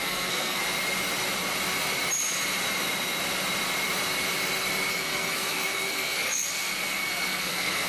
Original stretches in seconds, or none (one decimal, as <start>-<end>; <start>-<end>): 0.6-4.9